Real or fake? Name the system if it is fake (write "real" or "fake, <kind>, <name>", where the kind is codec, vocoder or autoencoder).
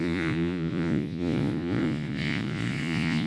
fake, vocoder, Vocos